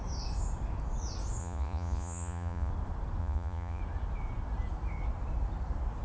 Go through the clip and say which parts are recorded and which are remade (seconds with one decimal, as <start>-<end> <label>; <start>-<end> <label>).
0.0-1.4 recorded; 1.4-2.7 remade; 2.7-3.2 recorded; 3.2-3.8 remade; 3.8-6.0 recorded